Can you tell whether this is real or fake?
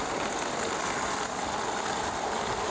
real